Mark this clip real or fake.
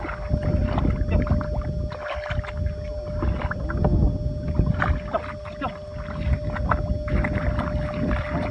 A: real